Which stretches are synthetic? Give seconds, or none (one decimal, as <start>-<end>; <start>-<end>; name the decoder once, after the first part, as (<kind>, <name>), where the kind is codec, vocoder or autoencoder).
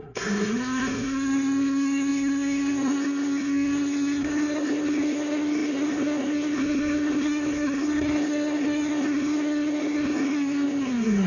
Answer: 0.0-11.3 (codec, SNAC)